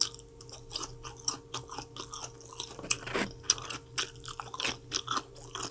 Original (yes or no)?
yes